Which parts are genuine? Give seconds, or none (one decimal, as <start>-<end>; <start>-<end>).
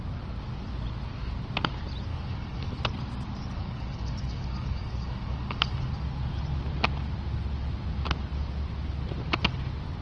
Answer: 0.0-2.1; 2.8-3.5; 5.9-10.0